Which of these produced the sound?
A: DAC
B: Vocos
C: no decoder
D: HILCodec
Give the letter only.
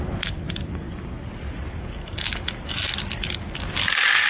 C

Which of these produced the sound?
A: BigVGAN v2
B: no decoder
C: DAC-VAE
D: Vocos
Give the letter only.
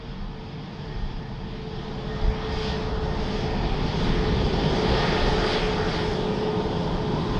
B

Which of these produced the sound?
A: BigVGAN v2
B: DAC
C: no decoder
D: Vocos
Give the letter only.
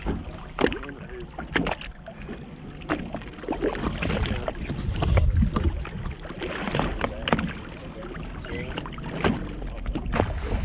C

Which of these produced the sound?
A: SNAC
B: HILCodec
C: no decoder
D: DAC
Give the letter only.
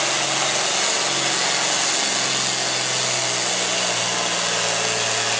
C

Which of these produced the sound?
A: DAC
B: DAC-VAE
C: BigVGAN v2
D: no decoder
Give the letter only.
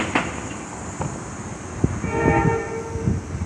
D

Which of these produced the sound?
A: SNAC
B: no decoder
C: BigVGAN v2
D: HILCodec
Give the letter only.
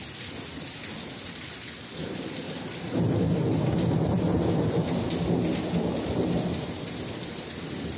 B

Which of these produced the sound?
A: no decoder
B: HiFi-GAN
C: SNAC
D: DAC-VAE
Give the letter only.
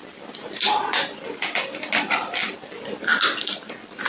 A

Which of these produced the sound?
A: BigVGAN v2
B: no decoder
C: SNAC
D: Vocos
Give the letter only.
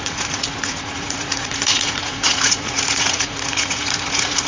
D